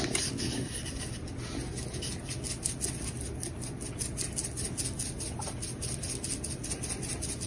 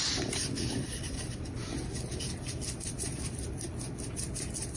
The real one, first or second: first